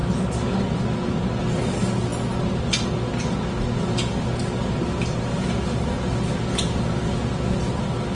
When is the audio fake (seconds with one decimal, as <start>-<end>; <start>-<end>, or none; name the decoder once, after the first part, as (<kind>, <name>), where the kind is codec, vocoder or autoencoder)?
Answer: none